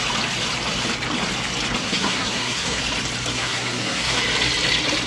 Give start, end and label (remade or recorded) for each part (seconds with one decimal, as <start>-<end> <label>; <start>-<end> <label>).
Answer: 0.0-1.8 recorded; 1.8-2.8 remade; 2.8-3.3 recorded; 3.3-4.2 remade; 4.2-5.1 recorded

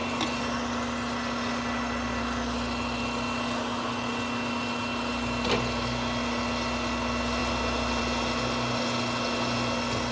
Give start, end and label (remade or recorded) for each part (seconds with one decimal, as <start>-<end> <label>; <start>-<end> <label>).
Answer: 0.0-10.1 recorded

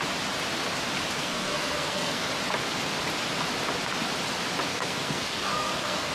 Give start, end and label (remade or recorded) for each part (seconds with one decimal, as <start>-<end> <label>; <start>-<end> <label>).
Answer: 0.0-1.2 recorded; 1.2-2.3 remade; 2.3-4.7 recorded; 4.7-6.1 remade

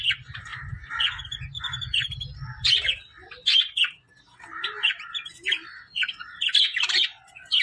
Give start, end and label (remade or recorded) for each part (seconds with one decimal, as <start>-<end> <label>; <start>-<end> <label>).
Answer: 0.0-7.6 recorded

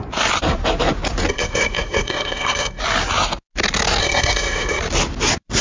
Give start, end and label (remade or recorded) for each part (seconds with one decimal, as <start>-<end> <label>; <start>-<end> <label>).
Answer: 0.0-1.3 recorded; 1.3-2.8 remade; 2.8-4.0 recorded; 4.0-4.8 remade; 4.8-5.6 recorded

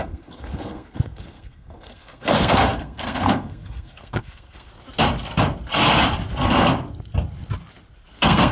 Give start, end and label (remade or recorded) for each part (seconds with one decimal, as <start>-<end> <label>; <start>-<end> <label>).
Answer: 0.0-4.7 remade; 4.7-8.1 recorded; 8.1-8.5 remade

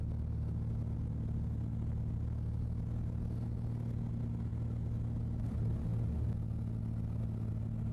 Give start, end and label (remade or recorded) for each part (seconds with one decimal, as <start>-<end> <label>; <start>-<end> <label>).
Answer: 0.0-7.9 recorded